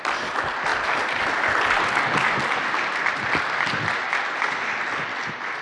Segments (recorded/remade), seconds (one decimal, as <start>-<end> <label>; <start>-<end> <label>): 0.0-5.6 recorded